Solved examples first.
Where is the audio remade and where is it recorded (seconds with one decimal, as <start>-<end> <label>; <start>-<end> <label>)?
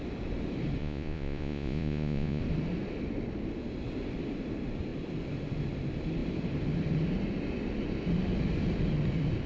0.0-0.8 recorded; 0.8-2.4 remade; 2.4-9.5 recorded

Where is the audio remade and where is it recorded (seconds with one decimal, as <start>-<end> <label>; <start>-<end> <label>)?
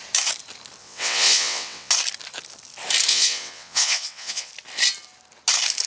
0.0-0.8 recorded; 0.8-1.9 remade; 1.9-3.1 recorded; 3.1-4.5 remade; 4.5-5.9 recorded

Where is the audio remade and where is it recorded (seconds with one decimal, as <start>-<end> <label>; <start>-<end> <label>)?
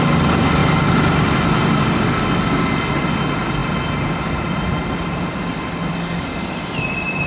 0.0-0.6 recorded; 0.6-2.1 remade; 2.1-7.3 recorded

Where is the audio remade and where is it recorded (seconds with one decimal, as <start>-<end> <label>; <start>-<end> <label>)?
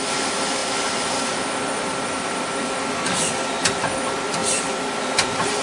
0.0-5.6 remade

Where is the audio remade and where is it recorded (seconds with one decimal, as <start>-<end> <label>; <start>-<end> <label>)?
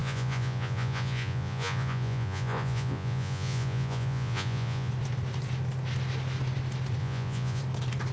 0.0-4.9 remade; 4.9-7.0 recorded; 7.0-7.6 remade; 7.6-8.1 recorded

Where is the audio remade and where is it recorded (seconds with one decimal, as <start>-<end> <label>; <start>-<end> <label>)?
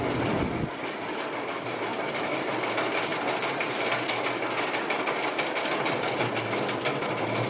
0.0-7.5 recorded